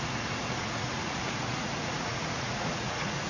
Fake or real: fake